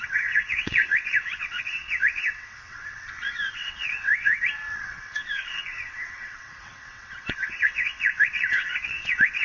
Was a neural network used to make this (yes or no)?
yes